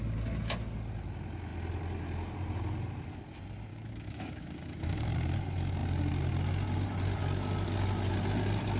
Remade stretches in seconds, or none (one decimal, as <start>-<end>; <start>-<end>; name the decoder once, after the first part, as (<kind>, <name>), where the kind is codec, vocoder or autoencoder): 3.7-5.1 (codec, DAC)